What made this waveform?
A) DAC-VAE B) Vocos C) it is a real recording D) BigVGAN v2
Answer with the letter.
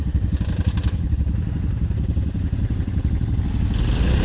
C